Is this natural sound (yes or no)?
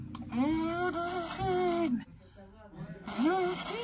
yes